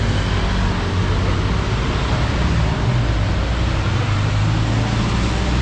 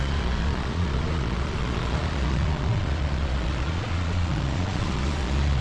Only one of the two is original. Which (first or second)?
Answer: first